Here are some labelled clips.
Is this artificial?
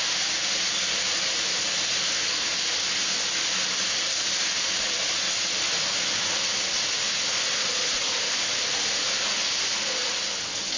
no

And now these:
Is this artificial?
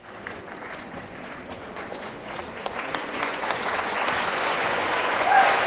yes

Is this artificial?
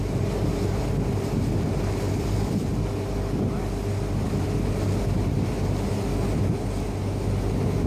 no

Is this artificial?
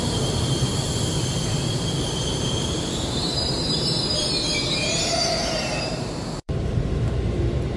yes